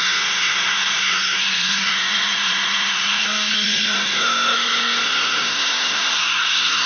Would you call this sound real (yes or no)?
no